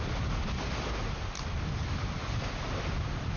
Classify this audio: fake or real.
real